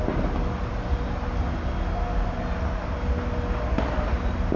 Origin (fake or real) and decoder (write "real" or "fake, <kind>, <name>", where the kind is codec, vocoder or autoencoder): real